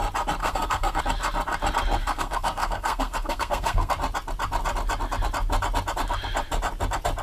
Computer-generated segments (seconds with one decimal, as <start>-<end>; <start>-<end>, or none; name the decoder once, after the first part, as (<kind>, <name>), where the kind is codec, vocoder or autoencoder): 0.4-1.0 (codec, SNAC); 2.0-3.9